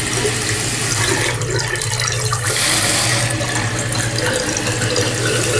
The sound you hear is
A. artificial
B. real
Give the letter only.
B